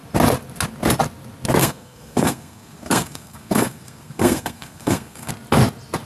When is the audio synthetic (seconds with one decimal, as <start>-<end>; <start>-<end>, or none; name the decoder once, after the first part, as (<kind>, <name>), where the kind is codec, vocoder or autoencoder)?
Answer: 1.6-5.3 (codec, SNAC)